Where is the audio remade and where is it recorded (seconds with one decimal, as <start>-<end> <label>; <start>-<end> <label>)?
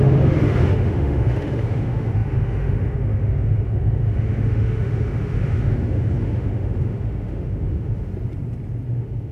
0.0-8.1 remade; 8.1-8.9 recorded; 8.9-9.3 remade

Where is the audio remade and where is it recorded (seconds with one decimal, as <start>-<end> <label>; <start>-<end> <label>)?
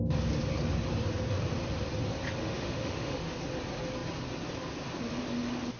0.0-2.4 recorded; 2.4-3.4 remade; 3.4-5.8 recorded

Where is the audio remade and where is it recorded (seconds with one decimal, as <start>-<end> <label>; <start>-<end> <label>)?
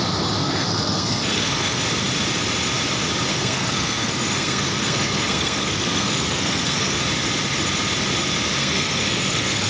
0.0-0.4 recorded; 0.4-1.8 remade; 1.8-3.3 recorded; 3.3-7.0 remade; 7.0-8.6 recorded; 8.6-9.7 remade